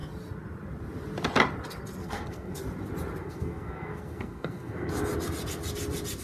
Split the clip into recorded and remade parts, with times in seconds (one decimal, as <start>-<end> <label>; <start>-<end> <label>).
0.0-2.0 recorded; 2.0-2.6 remade; 2.6-3.2 recorded; 3.2-4.9 remade; 4.9-6.2 recorded